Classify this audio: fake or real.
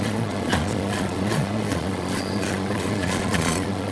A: fake